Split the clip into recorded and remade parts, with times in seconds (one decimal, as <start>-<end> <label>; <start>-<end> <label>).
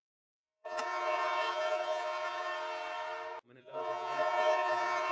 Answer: 0.0-2.5 remade; 2.5-3.6 recorded; 3.6-5.1 remade